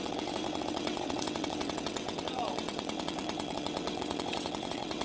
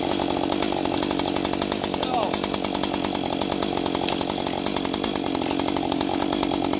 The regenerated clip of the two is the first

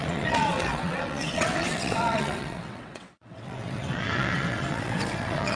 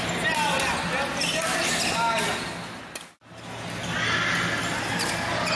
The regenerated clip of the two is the first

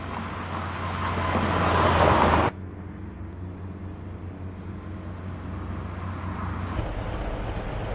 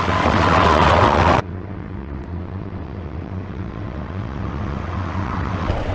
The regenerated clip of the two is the second